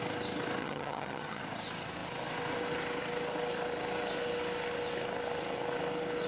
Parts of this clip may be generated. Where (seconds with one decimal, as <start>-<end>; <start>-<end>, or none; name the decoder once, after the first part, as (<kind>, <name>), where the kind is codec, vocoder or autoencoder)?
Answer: 0.6-1.4 (vocoder, HiFi-GAN)